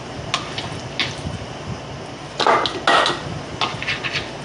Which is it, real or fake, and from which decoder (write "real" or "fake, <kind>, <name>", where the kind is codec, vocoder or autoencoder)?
real